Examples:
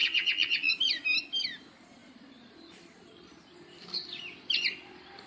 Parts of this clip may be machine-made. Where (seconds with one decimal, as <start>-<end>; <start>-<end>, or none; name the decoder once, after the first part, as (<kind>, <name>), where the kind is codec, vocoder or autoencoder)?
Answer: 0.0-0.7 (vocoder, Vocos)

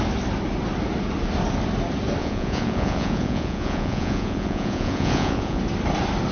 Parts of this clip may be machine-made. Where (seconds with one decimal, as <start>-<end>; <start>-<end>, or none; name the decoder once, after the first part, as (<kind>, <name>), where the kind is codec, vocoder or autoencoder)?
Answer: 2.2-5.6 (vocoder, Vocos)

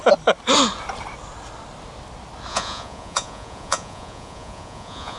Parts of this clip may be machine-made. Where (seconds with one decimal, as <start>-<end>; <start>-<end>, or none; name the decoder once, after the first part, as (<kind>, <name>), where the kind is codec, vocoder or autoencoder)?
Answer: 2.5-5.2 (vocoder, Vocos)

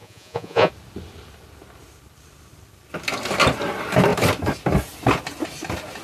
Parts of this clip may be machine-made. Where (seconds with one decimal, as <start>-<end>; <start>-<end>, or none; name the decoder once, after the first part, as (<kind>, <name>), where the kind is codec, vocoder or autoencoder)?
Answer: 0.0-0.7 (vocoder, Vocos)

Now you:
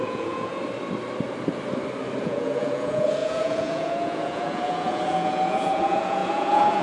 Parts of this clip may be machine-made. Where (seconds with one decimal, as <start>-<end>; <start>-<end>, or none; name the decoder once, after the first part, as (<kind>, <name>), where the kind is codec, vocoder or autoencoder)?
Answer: 0.0-0.5 (vocoder, Vocos); 2.2-6.8